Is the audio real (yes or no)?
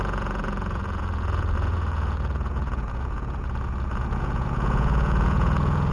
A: no